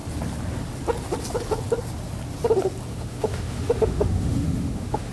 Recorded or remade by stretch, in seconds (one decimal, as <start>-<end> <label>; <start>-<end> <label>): 0.0-2.9 recorded; 2.9-5.1 remade